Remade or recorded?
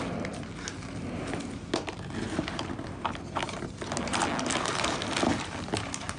recorded